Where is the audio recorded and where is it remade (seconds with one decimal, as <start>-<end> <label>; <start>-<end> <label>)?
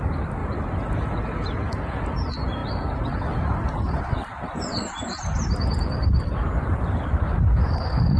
0.0-8.2 remade